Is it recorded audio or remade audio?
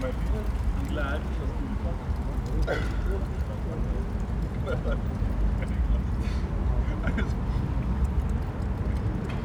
recorded